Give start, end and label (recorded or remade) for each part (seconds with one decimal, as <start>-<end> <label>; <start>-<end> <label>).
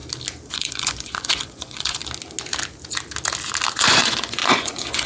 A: 0.0-0.5 recorded; 0.5-2.0 remade; 2.0-3.7 recorded; 3.7-5.1 remade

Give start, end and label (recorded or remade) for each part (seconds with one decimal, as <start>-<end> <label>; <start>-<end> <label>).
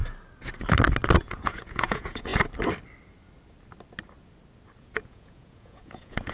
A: 0.0-1.2 recorded; 1.2-2.3 remade; 2.3-4.8 recorded; 4.8-6.3 remade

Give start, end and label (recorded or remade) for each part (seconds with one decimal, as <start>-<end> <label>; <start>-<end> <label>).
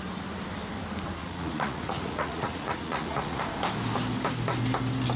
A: 0.0-1.2 recorded; 1.2-3.4 remade; 3.4-5.2 recorded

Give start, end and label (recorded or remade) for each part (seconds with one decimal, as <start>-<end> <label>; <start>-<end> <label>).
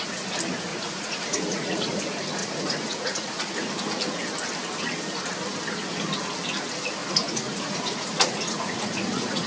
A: 0.0-0.7 recorded; 0.7-2.0 remade; 2.0-2.4 recorded; 2.4-3.7 remade; 3.7-7.0 recorded; 7.0-9.5 remade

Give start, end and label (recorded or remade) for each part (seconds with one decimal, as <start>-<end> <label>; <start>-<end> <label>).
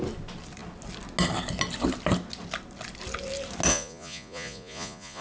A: 0.0-3.7 recorded; 3.7-5.2 remade